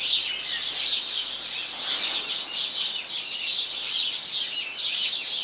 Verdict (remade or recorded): recorded